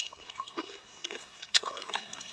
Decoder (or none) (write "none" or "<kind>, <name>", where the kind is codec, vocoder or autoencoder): codec, SNAC